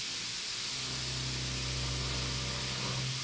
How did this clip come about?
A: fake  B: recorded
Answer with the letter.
B